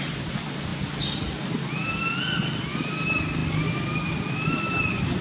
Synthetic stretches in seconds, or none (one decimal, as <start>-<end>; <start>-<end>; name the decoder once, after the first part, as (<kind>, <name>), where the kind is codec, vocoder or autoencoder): none